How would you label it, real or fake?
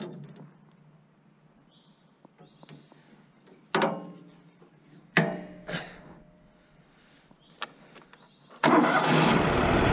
real